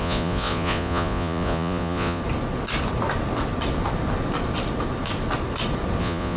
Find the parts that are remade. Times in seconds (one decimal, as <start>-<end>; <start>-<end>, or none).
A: 0.0-2.2; 6.0-6.4